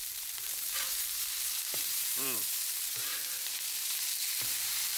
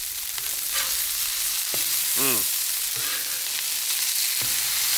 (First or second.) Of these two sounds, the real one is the second